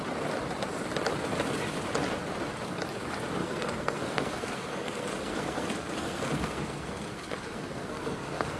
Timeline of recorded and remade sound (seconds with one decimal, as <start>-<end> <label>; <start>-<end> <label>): 0.0-3.4 recorded; 3.4-8.6 remade